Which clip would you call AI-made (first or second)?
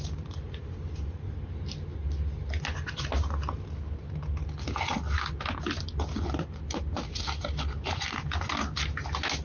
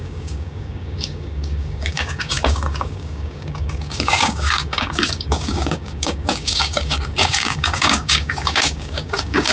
second